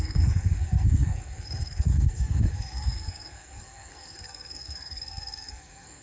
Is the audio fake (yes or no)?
yes